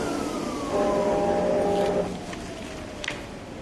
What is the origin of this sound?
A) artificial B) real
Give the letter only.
B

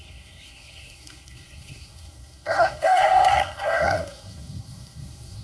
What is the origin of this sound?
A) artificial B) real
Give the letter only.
A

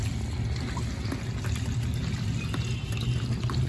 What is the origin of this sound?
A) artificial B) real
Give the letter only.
B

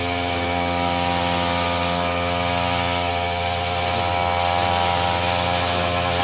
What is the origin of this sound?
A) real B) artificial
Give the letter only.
A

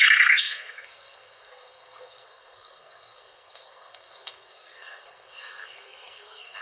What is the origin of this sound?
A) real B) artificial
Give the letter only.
B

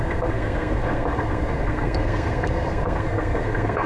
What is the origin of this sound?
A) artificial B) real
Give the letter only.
A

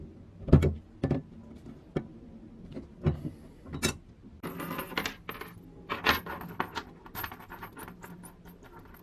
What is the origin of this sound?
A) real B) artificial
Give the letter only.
A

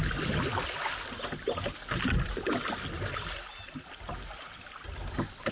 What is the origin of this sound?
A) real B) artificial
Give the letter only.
A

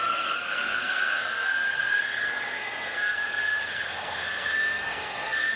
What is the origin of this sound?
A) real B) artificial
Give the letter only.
B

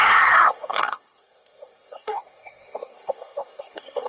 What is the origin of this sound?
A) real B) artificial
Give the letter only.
B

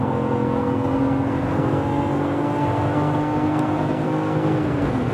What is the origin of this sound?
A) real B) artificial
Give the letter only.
B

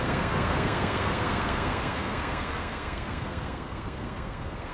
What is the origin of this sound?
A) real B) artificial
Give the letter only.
B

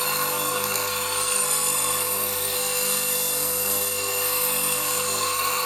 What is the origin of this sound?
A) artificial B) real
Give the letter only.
A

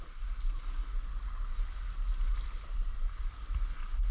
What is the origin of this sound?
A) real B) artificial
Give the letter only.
A